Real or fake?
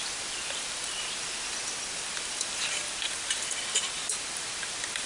fake